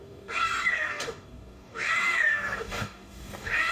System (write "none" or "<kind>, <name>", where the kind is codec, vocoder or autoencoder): codec, DAC